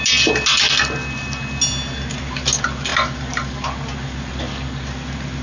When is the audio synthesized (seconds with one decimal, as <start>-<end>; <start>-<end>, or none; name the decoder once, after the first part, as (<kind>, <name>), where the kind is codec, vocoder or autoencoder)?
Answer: none